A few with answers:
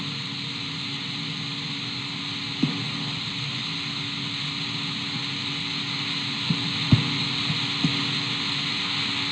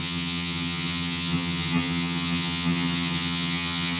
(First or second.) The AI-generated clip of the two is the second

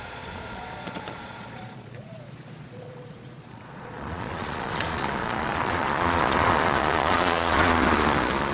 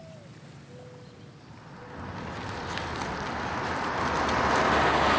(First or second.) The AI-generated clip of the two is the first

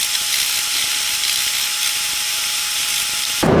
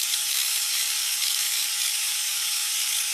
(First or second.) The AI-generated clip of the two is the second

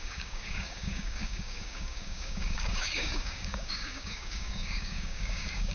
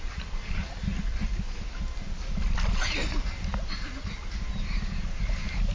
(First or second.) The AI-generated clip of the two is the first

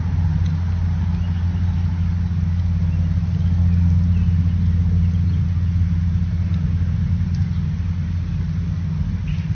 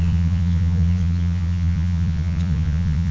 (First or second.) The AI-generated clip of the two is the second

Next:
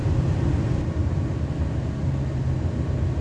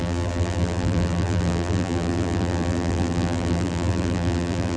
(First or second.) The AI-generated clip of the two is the second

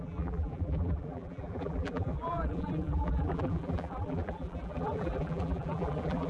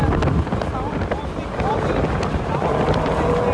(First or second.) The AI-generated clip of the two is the first